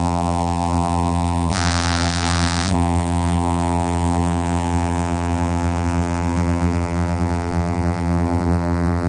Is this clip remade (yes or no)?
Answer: yes